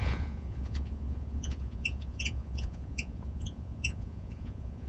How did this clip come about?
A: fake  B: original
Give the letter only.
A